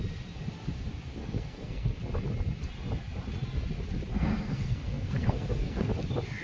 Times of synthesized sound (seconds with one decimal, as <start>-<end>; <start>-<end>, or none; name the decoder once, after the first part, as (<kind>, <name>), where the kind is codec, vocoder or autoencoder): 1.2-2.0 (codec, SNAC); 4.1-5.9